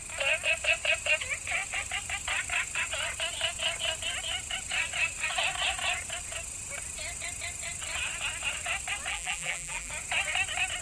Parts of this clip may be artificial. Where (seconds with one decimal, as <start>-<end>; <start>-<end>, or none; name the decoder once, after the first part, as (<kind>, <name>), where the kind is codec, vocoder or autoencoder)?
9.1-9.9 (vocoder, BigVGAN v2)